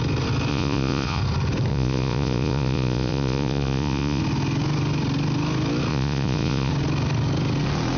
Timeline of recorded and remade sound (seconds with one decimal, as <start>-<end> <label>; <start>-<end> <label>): 0.0-0.5 recorded; 0.5-1.2 remade; 1.2-1.7 recorded; 1.7-4.2 remade; 4.2-5.9 recorded; 5.9-6.7 remade; 6.7-8.0 recorded